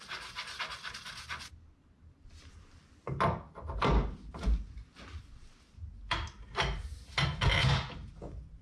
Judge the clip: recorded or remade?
recorded